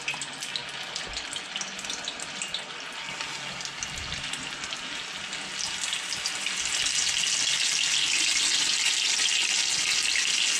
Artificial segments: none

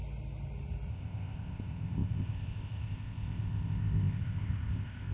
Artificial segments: 0.9-5.1 (codec, ZipCodec)

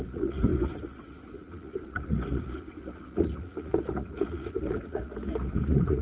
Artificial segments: 0.0-6.0 (vocoder, Vocos)